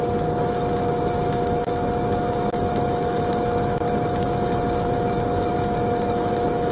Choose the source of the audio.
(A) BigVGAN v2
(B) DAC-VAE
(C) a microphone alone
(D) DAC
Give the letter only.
B